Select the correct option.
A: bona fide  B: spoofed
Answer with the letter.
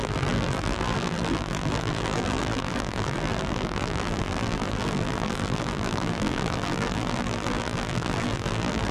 B